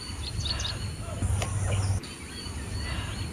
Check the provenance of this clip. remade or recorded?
recorded